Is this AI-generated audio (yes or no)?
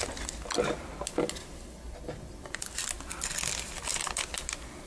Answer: no